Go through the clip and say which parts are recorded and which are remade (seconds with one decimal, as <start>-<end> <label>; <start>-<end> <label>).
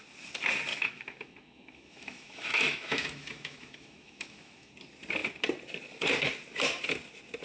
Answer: 0.0-0.7 recorded; 0.7-4.7 remade; 4.7-7.4 recorded